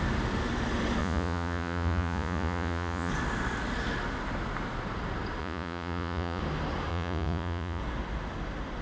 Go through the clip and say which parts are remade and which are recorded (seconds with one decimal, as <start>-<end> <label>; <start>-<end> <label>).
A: 0.0-1.0 recorded; 1.0-3.1 remade; 3.1-5.4 recorded; 5.4-6.4 remade; 6.4-6.9 recorded; 6.9-7.8 remade; 7.8-8.8 recorded